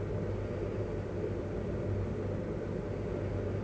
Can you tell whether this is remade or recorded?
recorded